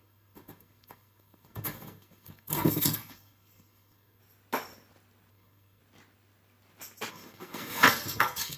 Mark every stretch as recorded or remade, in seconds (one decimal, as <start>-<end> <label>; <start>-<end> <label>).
0.0-4.2 remade; 4.2-5.3 recorded; 5.3-5.8 remade; 5.8-7.1 recorded; 7.1-8.6 remade